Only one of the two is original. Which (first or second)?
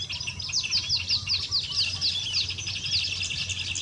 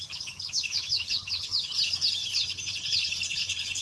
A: first